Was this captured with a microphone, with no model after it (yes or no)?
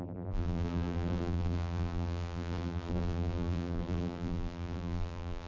no